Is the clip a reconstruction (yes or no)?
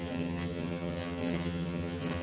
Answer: yes